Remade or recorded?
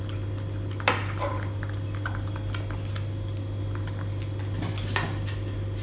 recorded